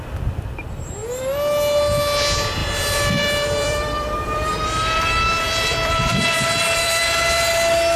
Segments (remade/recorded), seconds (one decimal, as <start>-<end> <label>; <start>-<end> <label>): 0.0-2.6 recorded; 2.6-7.0 remade; 7.0-8.0 recorded